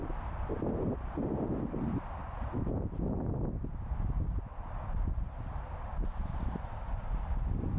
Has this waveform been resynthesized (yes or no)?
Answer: no